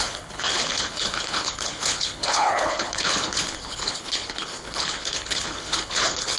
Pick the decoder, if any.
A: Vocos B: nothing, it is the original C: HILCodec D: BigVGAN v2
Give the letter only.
C